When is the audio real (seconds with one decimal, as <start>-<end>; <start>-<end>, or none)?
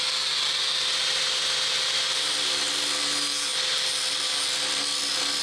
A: 0.0-5.4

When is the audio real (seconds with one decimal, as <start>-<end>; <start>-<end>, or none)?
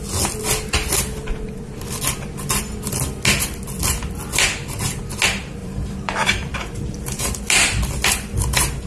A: 0.0-5.6; 7.4-8.9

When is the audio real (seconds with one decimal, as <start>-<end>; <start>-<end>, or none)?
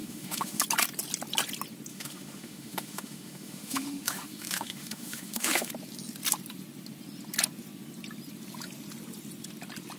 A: 0.6-1.9; 5.7-10.0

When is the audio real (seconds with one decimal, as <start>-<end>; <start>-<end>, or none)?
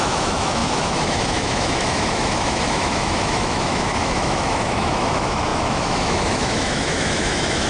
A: none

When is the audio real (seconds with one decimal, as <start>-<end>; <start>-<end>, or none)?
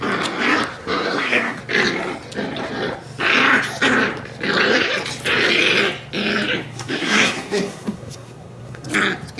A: 0.0-0.8; 1.6-6.7; 8.9-9.4